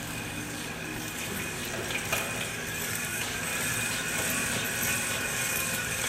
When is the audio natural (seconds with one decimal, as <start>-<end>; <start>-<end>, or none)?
1.6-2.4; 3.5-5.1